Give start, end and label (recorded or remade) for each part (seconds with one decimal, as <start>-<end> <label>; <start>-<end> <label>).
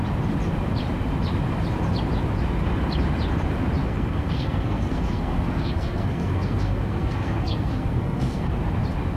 0.0-3.8 recorded; 3.8-8.5 remade; 8.5-9.2 recorded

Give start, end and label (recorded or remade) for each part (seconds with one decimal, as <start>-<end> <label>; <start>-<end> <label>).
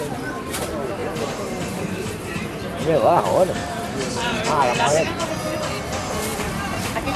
0.0-1.0 recorded; 1.0-5.3 remade; 5.3-6.3 recorded; 6.3-7.2 remade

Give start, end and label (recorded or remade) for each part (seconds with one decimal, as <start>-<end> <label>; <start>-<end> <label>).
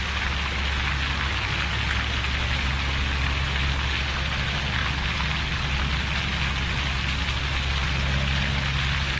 0.0-9.2 recorded